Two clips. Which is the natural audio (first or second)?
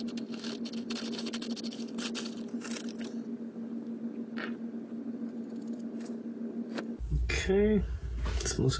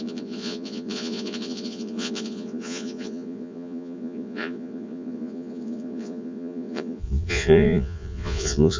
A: first